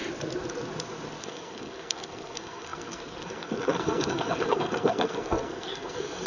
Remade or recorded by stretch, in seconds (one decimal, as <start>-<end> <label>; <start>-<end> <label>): 0.0-1.2 recorded; 1.2-6.3 remade